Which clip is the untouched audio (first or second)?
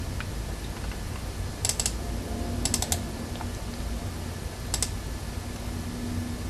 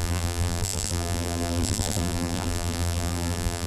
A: first